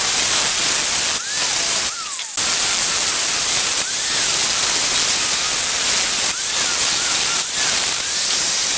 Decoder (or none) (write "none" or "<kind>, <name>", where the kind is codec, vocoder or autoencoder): none